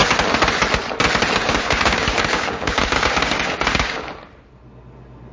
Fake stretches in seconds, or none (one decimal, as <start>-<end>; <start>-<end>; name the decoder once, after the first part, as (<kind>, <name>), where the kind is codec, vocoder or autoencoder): 1.4-4.1 (codec, DAC)